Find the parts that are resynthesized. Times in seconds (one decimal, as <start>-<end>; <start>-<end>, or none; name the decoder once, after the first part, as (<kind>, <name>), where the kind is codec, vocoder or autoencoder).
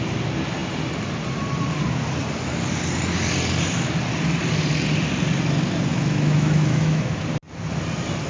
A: 5.9-7.0 (autoencoder, DAC-VAE)